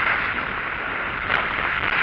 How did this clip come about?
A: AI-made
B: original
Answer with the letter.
B